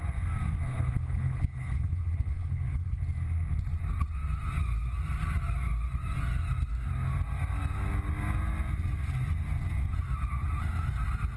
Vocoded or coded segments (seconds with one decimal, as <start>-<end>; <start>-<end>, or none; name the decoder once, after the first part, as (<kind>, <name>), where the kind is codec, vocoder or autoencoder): 0.7-3.0 (codec, HILCodec)